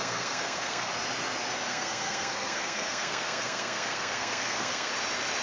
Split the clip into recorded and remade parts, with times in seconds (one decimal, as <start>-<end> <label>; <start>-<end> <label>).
0.0-0.9 remade; 0.9-1.7 recorded; 1.7-4.9 remade; 4.9-5.4 recorded